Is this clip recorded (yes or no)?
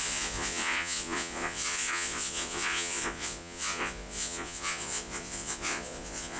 no